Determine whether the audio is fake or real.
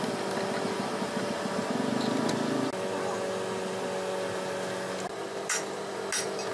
real